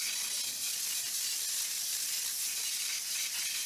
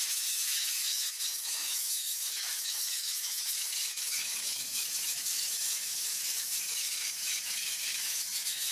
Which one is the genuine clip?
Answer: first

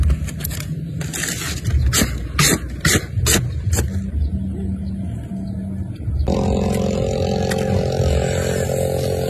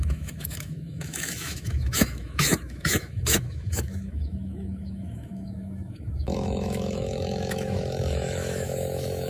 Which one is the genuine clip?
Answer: first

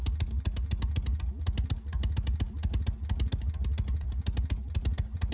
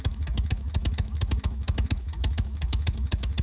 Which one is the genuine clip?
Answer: first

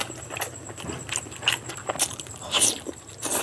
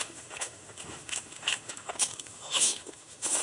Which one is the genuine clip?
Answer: first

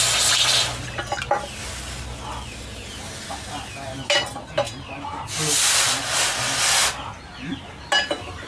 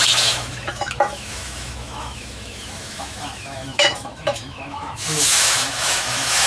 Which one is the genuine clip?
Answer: first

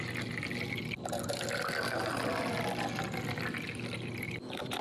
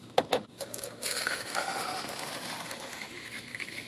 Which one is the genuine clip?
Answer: first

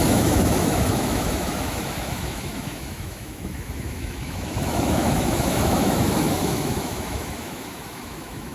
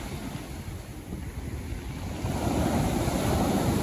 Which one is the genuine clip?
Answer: second